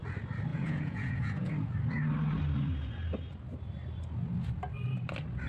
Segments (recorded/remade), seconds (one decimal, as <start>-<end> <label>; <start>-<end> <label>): 0.0-0.5 recorded; 0.5-1.5 remade; 1.5-5.5 recorded